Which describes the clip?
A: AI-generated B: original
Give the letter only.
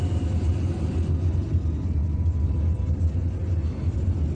B